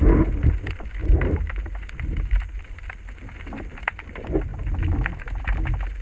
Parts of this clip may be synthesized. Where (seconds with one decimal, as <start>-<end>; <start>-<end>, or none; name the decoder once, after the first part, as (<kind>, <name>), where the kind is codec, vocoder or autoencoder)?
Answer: none